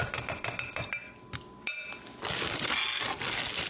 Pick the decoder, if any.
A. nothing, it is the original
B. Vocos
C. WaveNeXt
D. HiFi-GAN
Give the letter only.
A